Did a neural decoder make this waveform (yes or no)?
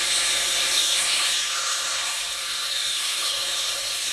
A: yes